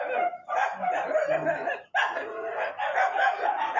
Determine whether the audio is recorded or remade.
recorded